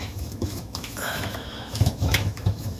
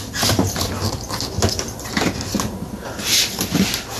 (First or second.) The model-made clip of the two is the first